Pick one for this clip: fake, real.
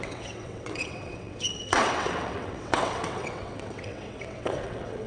fake